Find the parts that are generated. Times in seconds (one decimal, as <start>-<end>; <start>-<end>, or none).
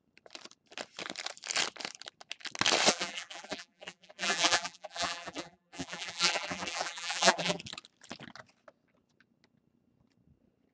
2.9-7.6